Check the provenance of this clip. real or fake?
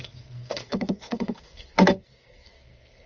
fake